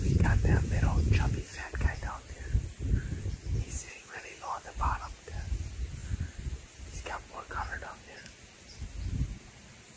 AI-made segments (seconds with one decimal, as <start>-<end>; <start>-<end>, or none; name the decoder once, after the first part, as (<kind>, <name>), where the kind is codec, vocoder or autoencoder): none